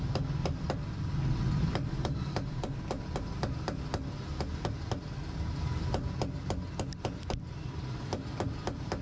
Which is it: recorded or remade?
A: recorded